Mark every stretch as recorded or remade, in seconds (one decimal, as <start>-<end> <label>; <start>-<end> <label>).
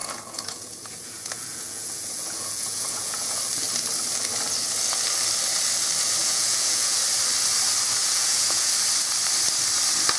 0.0-3.4 remade; 3.4-6.2 recorded; 6.2-7.0 remade; 7.0-8.0 recorded; 8.0-8.7 remade; 8.7-10.2 recorded